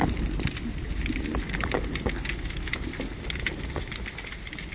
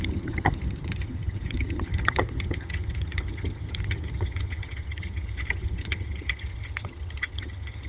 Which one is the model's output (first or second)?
second